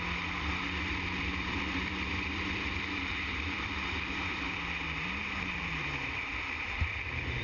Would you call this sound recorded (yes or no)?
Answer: no